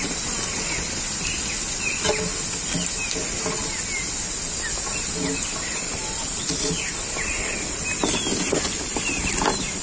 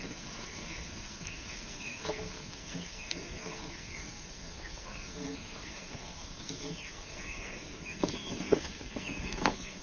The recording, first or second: first